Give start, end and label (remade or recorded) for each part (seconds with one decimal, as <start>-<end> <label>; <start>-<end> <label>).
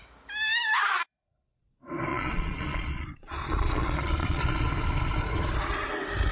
0.0-0.9 recorded; 0.9-1.6 remade; 1.6-2.1 recorded; 2.1-4.6 remade; 4.6-6.3 recorded